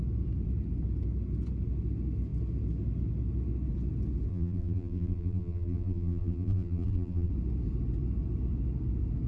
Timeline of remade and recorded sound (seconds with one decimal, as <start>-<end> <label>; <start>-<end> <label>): 0.0-4.3 recorded; 4.3-7.3 remade; 7.3-9.3 recorded